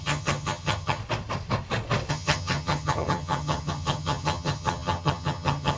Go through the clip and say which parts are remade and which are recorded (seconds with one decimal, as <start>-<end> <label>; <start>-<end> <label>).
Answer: 0.0-1.0 remade; 1.0-2.1 recorded; 2.1-5.8 remade